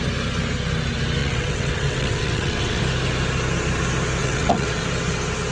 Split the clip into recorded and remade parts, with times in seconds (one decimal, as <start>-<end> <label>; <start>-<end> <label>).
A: 0.0-1.2 recorded; 1.2-2.8 remade; 2.8-4.2 recorded; 4.2-4.8 remade; 4.8-5.5 recorded